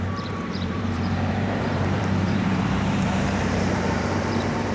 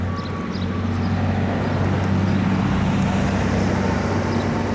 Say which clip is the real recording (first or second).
second